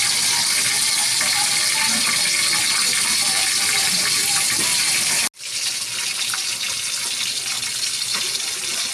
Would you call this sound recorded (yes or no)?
yes